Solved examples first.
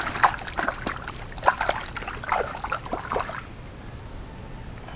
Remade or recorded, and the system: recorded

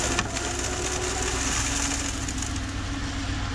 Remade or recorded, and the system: recorded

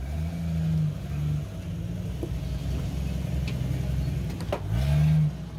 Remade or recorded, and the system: recorded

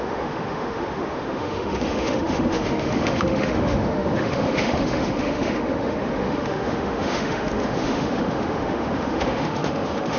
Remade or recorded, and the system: remade, autoencoder, DAC-VAE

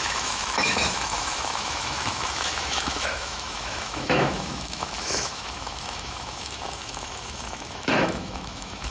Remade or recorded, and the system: remade, autoencoder, DAC-VAE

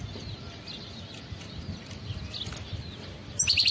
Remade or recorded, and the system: recorded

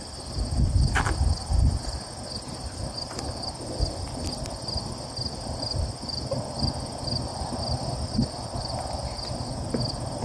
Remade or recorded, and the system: recorded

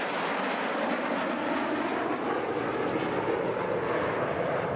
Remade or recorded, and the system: recorded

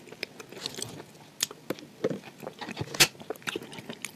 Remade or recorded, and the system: recorded